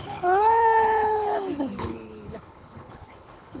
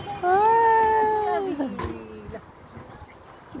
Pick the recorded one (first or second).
second